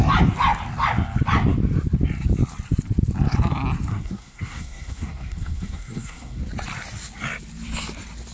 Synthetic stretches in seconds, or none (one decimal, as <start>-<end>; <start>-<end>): 3.9-6.4